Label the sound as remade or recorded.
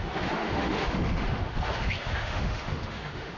remade